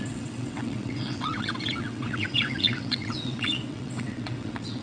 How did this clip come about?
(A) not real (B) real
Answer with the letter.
A